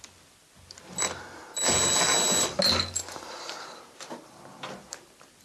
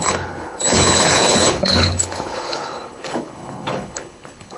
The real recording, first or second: first